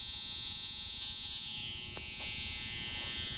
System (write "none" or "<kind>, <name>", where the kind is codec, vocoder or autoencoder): vocoder, Vocos